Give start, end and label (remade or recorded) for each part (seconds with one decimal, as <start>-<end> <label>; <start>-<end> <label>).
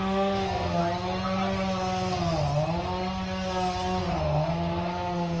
0.0-0.8 remade; 0.8-4.0 recorded; 4.0-5.4 remade